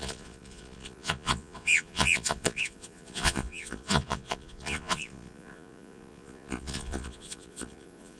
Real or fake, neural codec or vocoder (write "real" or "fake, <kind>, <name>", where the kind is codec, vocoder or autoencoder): fake, vocoder, Vocos